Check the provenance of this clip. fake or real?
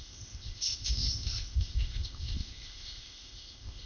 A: fake